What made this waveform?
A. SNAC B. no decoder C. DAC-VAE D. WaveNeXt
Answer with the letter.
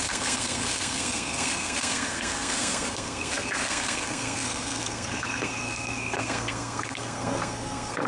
A